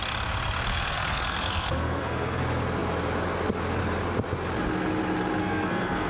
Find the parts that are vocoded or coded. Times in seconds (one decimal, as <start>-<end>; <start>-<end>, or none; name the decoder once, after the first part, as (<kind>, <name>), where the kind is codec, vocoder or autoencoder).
0.7-2.4 (codec, SNAC); 5.4-6.1